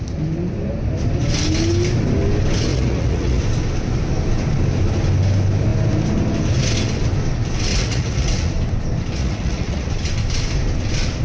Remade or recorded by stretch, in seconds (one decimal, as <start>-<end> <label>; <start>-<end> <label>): 0.0-2.7 recorded; 2.7-3.4 remade; 3.4-7.7 recorded; 7.7-8.5 remade; 8.5-9.2 recorded; 9.2-9.9 remade; 9.9-11.2 recorded